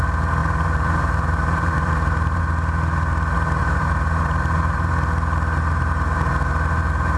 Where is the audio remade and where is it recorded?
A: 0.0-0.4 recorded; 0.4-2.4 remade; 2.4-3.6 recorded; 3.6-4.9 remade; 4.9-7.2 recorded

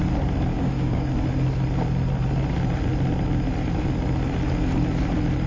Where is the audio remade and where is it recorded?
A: 0.0-0.5 recorded; 0.5-1.1 remade; 1.1-5.5 recorded